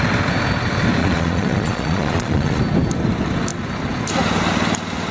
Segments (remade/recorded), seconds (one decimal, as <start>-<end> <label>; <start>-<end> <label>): 0.0-1.0 recorded; 1.0-2.6 remade; 2.6-5.1 recorded